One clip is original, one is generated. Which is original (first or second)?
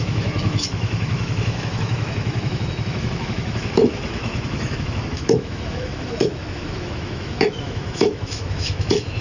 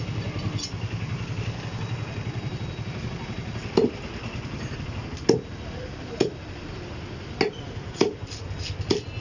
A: second